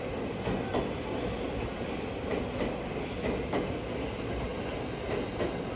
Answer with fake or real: real